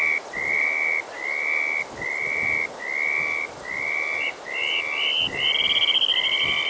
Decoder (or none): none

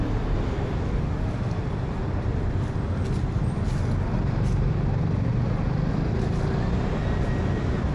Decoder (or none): none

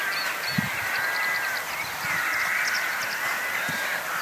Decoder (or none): none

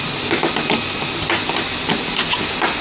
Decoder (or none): none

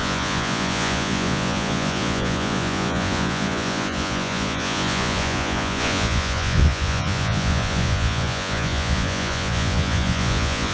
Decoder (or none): vocoder, Vocos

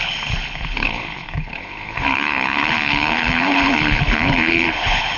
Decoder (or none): codec, HILCodec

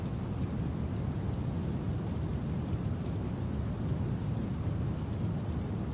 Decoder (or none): none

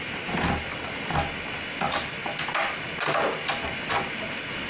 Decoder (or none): none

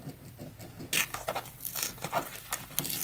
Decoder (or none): none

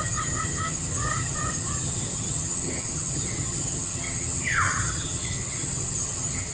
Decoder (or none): vocoder, HiFi-GAN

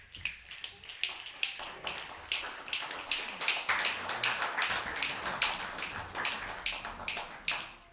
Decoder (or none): none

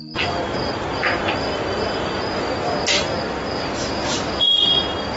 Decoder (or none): none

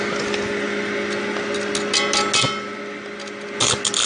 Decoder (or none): none